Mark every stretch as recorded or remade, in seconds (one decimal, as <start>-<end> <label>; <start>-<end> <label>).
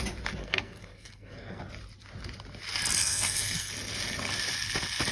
0.0-0.4 recorded; 0.4-1.6 remade; 1.6-3.0 recorded; 3.0-3.7 remade; 3.7-5.1 recorded